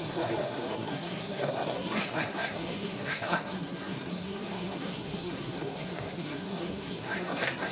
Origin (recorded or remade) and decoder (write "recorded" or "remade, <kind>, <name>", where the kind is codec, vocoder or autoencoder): remade, codec, SNAC